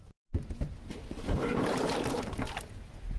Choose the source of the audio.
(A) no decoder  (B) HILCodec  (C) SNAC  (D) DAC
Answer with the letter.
A